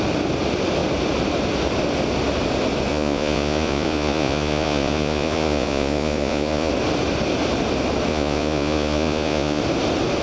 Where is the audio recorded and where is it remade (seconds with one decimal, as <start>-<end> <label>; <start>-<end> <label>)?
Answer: 0.0-2.9 recorded; 2.9-6.7 remade; 6.7-8.1 recorded; 8.1-9.6 remade; 9.6-10.2 recorded